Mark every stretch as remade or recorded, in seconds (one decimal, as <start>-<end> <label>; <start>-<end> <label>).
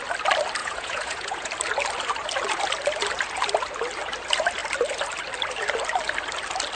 0.0-0.6 recorded; 0.6-1.5 remade; 1.5-6.8 recorded